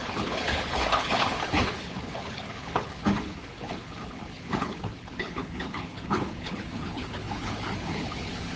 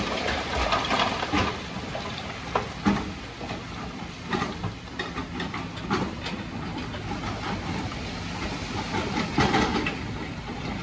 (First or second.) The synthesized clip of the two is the first